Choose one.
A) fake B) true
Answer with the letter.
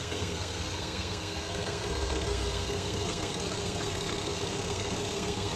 A